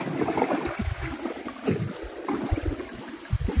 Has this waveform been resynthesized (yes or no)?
no